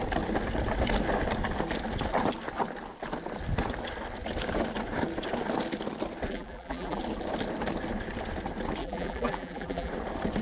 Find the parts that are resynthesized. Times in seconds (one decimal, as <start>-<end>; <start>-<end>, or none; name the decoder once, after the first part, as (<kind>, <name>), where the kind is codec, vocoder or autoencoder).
6.3-7.0 (vocoder, BigVGAN v2); 8.8-9.9